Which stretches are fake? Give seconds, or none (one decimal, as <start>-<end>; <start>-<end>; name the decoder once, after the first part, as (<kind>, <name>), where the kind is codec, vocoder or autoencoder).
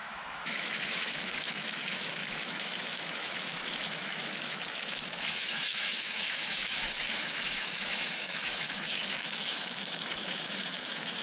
0.0-11.2 (autoencoder, DAC-VAE)